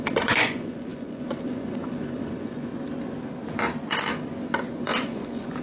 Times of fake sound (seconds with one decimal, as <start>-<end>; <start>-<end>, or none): 0.0-2.7; 4.7-5.6